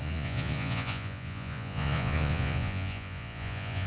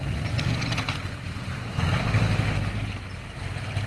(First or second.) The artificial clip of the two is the first